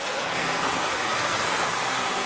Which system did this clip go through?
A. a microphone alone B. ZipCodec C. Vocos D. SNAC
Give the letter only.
D